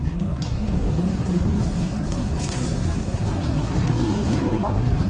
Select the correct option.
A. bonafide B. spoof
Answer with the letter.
B